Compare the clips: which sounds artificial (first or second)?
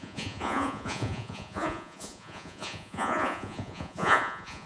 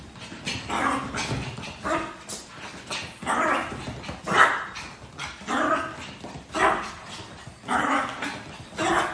first